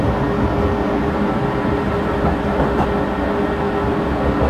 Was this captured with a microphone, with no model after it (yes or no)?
yes